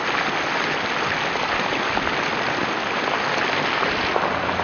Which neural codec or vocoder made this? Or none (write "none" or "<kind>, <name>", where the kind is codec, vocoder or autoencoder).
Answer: none